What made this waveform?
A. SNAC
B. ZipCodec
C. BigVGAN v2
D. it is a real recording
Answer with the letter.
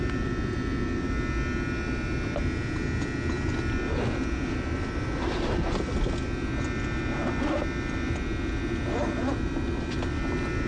D